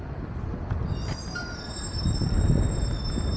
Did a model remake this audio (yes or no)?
no